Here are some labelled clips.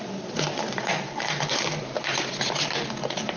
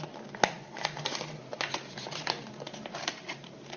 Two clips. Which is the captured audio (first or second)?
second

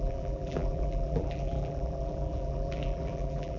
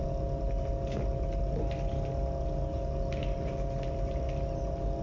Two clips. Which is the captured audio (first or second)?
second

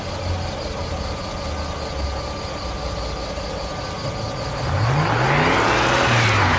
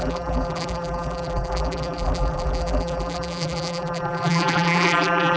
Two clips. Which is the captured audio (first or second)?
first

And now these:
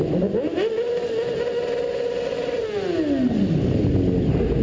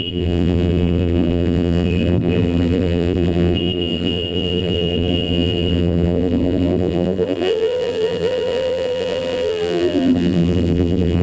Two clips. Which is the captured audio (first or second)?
first